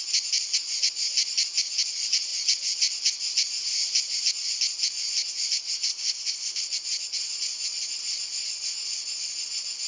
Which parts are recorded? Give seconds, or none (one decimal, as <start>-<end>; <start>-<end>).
0.0-5.9; 6.6-9.9